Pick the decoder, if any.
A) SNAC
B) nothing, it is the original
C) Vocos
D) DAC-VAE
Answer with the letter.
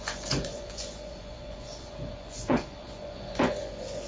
C